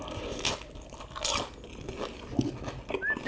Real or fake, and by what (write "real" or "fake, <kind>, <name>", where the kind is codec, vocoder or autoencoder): real